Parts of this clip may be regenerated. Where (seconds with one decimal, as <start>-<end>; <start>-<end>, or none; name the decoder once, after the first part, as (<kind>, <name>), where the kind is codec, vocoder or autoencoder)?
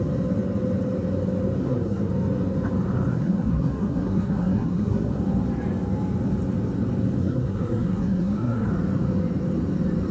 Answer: 1.6-2.1 (codec, SNAC); 3.1-5.2; 7.2-8.7